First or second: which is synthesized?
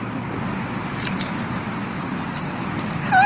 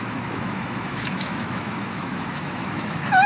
second